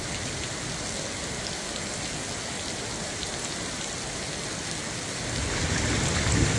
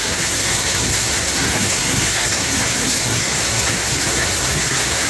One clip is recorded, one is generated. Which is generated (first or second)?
second